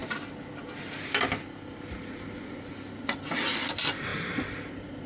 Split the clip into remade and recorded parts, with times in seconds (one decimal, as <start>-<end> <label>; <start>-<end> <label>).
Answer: 0.0-5.1 recorded